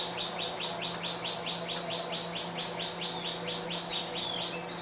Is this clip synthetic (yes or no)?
no